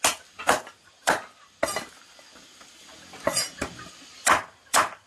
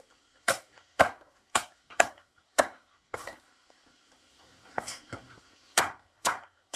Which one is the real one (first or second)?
first